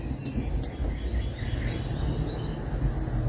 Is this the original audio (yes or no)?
yes